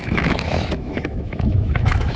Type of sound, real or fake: fake